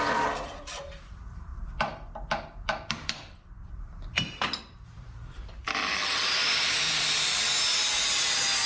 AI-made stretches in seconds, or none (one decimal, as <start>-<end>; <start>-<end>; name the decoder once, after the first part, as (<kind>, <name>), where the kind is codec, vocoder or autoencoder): 0.0-7.5 (vocoder, BigVGAN v2)